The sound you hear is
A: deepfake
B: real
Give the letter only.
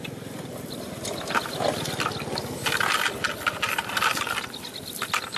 B